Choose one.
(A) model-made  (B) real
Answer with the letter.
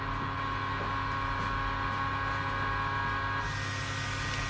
B